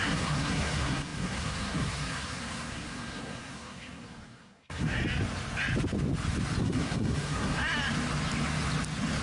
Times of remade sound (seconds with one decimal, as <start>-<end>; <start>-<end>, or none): 0.0-5.0; 6.6-7.6